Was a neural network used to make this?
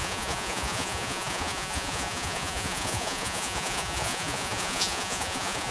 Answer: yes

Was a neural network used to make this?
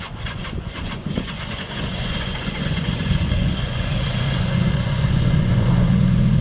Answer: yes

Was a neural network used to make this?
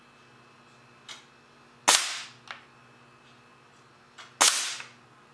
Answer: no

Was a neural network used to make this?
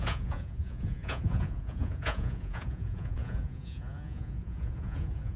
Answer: yes